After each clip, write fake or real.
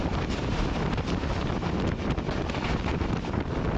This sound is fake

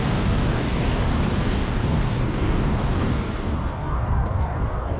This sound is fake